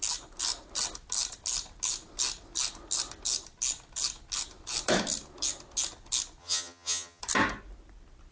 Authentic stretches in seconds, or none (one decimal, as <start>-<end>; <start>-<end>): 0.0-6.4; 7.2-8.3